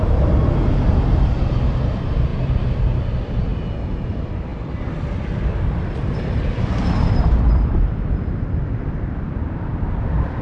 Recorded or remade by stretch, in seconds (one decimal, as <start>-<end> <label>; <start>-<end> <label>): 0.0-3.5 remade; 3.5-4.0 recorded; 4.0-10.4 remade

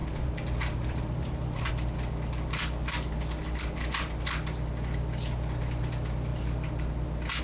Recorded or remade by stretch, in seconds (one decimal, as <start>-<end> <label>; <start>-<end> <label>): 0.0-1.7 remade; 1.7-7.4 recorded

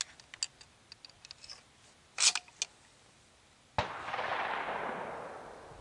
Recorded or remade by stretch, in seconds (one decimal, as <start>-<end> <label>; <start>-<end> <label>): 0.0-5.8 recorded

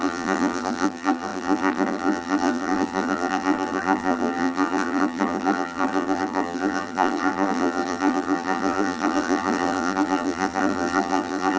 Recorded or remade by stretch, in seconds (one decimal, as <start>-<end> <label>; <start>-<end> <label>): 0.0-11.6 remade

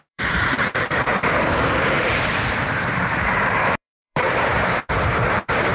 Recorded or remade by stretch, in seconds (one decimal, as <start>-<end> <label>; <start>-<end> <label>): 0.0-5.7 remade

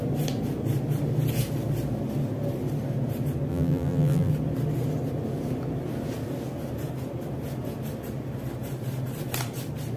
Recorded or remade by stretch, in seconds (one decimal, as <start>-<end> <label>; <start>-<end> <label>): 0.0-3.5 recorded; 3.5-4.3 remade; 4.3-10.0 recorded

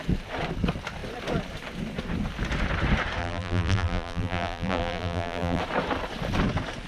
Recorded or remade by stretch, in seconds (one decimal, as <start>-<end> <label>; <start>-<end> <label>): 0.0-3.2 recorded; 3.2-5.6 remade; 5.6-6.9 recorded